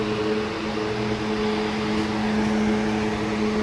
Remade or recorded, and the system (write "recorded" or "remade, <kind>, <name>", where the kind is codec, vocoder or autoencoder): recorded